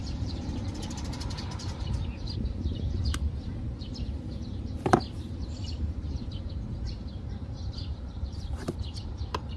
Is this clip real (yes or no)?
no